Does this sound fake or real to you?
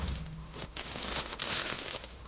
fake